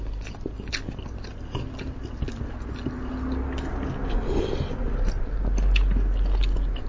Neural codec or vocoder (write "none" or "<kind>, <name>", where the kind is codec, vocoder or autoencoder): none